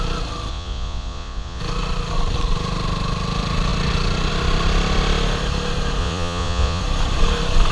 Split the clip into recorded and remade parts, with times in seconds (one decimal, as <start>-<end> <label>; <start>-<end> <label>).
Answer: 0.0-0.5 recorded; 0.5-1.6 remade; 1.6-6.0 recorded; 6.0-6.8 remade; 6.8-7.7 recorded